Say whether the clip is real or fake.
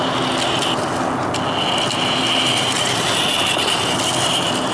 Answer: real